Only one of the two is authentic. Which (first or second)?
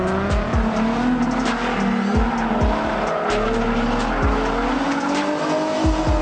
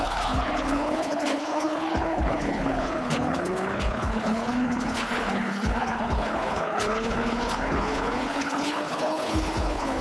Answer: first